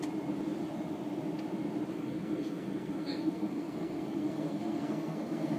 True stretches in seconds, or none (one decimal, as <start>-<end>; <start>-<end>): 0.0-1.9